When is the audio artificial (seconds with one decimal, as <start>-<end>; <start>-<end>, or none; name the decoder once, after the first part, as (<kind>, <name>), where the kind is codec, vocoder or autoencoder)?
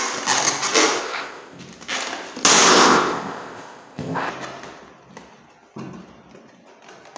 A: 1.0-1.6 (codec, ZipCodec); 2.7-4.3